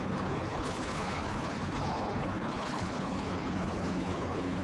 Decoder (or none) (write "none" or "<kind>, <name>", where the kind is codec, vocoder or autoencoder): codec, HILCodec